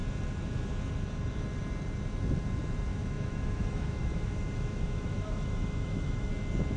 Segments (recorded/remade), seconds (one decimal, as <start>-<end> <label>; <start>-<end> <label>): 0.0-2.9 recorded; 2.9-6.3 remade; 6.3-6.8 recorded